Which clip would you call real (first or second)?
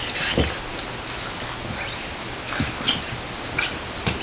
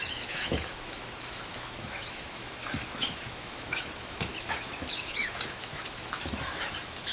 first